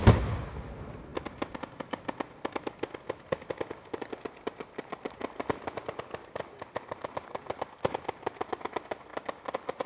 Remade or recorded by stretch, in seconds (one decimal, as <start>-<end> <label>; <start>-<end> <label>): 0.0-9.9 recorded